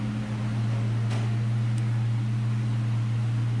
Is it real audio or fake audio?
real